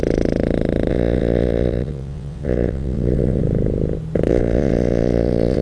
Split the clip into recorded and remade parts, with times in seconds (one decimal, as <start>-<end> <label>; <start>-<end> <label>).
0.0-0.9 recorded; 0.9-3.4 remade; 3.4-4.3 recorded; 4.3-5.6 remade